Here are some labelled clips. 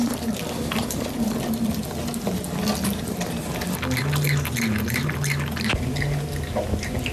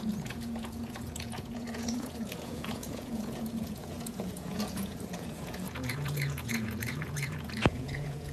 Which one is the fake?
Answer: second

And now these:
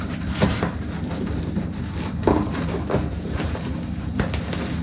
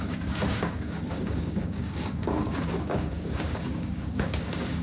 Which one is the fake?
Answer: second